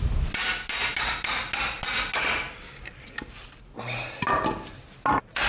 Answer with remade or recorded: recorded